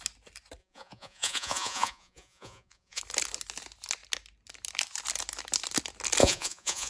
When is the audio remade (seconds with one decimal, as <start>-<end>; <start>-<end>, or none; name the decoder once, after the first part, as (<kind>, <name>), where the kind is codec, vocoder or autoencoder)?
0.6-3.0 (vocoder, Vocos); 6.2-6.9